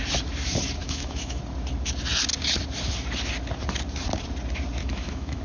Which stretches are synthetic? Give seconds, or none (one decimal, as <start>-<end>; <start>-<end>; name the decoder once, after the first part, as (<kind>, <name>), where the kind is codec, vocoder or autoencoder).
0.8-1.4 (autoencoder, DAC-VAE); 4.8-5.4